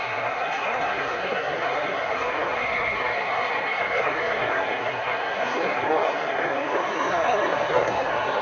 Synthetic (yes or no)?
yes